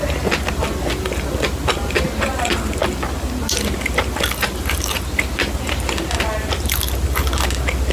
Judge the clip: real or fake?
real